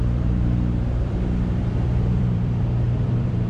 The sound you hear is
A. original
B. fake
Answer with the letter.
B